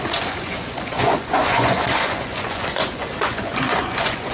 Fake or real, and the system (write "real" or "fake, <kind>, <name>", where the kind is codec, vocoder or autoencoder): fake, vocoder, Vocos